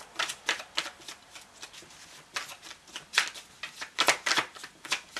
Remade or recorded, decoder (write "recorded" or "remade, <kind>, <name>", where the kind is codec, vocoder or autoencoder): recorded